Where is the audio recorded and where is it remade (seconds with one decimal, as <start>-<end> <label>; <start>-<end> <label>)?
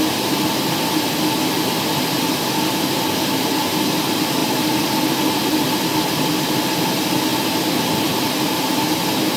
0.0-9.4 recorded